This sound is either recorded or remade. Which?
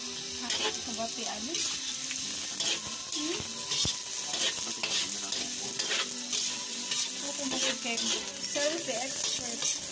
recorded